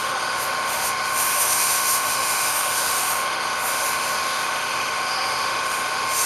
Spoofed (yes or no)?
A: yes